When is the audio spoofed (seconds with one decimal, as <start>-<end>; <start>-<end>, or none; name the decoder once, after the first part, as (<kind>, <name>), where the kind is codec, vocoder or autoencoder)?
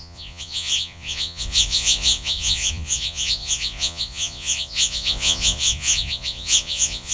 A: 0.0-7.1 (vocoder, Vocos)